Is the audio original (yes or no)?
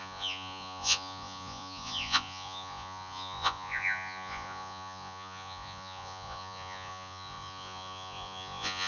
no